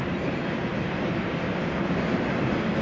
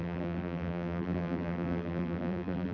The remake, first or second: second